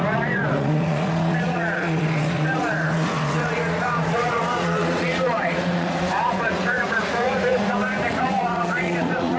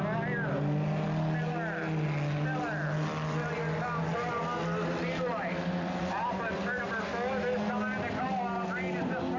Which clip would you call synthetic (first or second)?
first